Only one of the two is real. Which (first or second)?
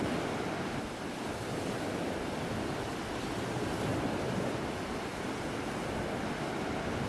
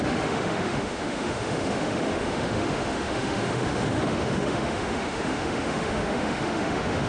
first